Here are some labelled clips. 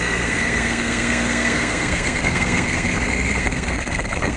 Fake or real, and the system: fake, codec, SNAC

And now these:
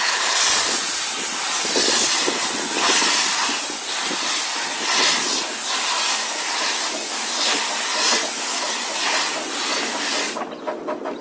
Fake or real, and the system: real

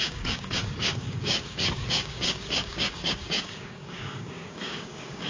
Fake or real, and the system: fake, codec, DAC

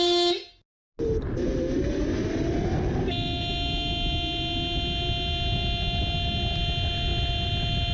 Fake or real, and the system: real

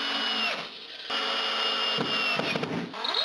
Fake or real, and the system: real